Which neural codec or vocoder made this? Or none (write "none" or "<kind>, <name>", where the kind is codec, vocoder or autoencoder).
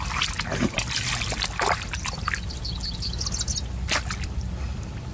none